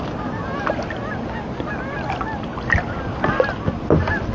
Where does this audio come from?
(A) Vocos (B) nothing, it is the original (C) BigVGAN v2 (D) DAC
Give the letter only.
B